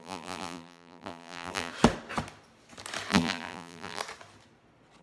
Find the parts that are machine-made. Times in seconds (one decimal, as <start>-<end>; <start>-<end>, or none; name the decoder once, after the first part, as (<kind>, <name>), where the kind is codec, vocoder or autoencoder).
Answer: 0.0-1.7 (vocoder, BigVGAN v2); 3.1-4.0